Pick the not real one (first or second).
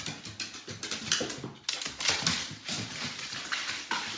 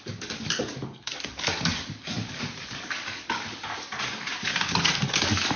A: second